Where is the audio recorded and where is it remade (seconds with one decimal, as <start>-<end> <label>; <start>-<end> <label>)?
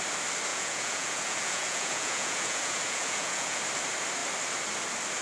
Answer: 0.0-0.5 recorded; 0.5-3.6 remade; 3.6-5.2 recorded